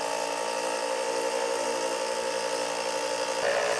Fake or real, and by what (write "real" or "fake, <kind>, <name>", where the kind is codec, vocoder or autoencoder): real